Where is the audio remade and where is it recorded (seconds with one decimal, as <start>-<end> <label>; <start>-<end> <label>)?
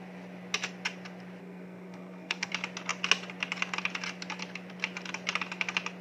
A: 0.0-1.4 recorded; 1.4-2.5 remade; 2.5-6.0 recorded